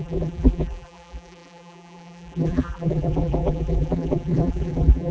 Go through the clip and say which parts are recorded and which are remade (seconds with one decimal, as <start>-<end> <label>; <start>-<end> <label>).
0.0-5.1 remade